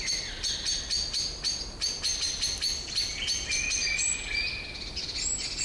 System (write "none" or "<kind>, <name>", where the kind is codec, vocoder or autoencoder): none